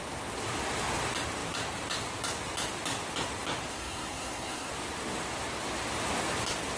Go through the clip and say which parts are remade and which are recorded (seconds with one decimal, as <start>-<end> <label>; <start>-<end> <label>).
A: 0.0-3.7 recorded; 3.7-4.7 remade; 4.7-6.8 recorded